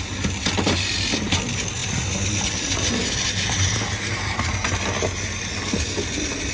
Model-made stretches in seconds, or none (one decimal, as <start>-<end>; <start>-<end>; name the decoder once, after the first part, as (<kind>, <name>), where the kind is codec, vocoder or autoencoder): none